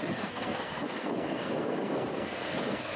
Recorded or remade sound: remade